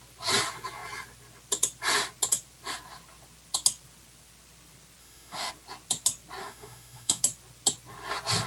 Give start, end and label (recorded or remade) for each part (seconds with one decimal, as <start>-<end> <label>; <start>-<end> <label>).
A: 0.0-5.0 recorded; 5.0-5.5 remade; 5.5-6.4 recorded; 6.4-7.2 remade; 7.2-8.5 recorded